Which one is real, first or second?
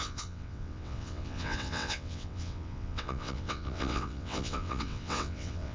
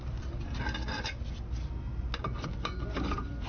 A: second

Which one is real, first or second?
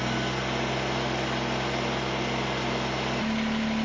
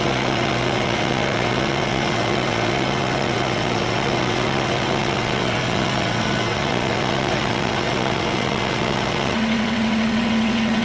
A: first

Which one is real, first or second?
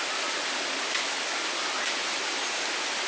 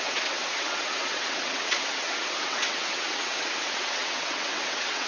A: first